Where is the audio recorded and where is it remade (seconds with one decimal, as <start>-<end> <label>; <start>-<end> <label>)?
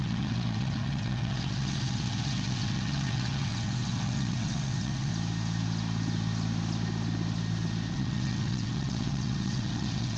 0.0-5.1 remade; 5.1-7.9 recorded; 7.9-10.2 remade